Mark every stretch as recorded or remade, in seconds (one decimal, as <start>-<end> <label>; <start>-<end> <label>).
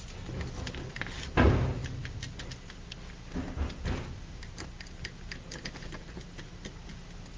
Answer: 0.0-7.4 recorded